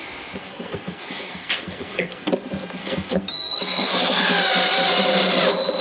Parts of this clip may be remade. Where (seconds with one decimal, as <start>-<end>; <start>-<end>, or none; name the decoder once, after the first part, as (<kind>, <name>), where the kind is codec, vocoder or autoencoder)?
0.4-2.3 (codec, SNAC); 2.8-4.3